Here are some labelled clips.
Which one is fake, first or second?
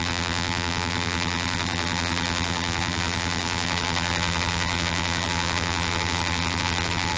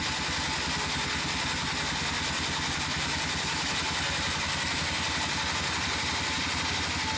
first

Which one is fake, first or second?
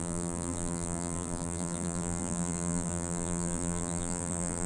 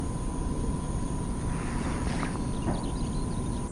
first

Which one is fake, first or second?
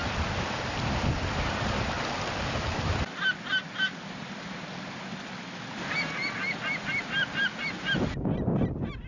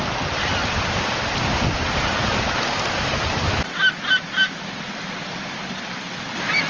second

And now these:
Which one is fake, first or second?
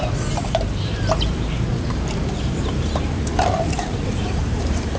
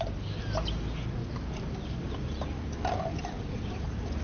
first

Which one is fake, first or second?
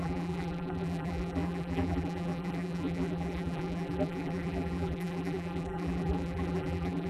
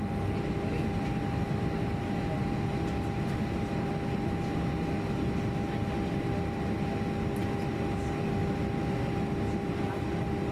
first